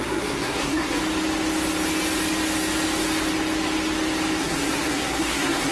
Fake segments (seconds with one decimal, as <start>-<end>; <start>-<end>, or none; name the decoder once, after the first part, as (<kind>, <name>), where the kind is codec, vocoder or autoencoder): 0.0-1.0 (codec, SNAC); 4.4-5.7